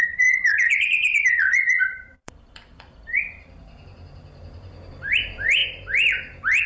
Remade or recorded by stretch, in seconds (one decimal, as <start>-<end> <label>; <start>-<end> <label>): 0.0-6.7 remade